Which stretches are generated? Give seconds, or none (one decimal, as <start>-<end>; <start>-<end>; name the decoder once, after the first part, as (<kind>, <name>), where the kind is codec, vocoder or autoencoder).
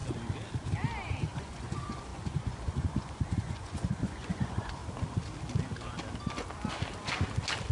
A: 1.2-4.8 (vocoder, Vocos)